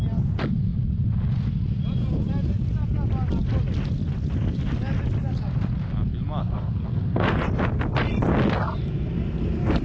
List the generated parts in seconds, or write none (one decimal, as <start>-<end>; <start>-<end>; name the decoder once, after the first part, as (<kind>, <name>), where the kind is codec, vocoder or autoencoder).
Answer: 6.4-7.4 (codec, SNAC)